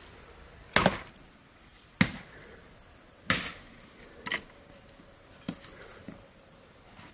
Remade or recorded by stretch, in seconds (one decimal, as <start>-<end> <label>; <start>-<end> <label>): 0.0-7.1 recorded